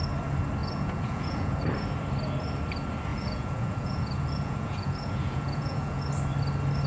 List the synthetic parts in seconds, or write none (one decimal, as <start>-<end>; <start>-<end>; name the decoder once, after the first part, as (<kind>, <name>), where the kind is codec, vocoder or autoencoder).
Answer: 0.6-1.6 (vocoder, Vocos); 3.1-6.0